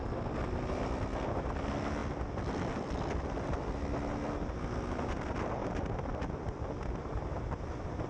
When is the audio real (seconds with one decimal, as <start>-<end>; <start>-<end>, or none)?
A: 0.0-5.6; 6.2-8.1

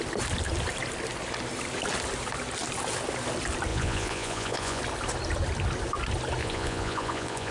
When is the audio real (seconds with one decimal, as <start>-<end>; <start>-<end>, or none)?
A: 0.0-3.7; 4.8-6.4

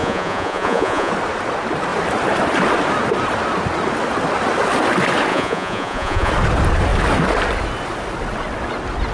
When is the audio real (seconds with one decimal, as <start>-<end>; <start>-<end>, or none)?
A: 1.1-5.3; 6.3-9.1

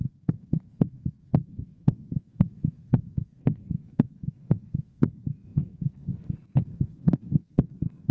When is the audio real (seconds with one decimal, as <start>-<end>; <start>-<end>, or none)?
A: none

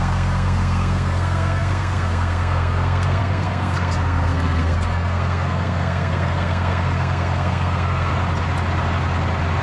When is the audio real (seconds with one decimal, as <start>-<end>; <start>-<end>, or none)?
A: 8.1-9.6

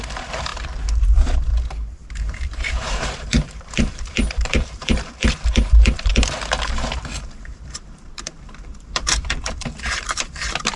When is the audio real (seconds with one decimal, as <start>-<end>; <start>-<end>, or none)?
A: 0.5-1.0; 1.5-2.1

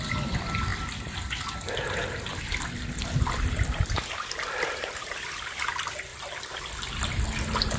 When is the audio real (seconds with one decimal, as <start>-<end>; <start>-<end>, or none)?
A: 0.0-7.8